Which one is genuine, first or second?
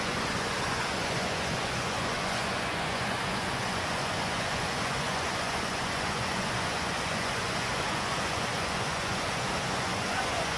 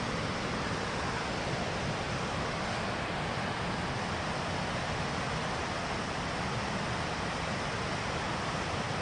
second